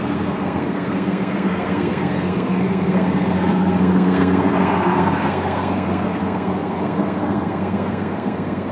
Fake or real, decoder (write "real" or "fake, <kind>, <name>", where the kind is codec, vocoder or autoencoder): fake, codec, SNAC